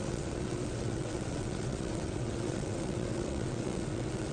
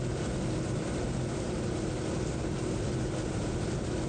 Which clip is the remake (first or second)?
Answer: first